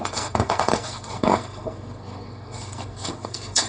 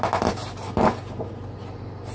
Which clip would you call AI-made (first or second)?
first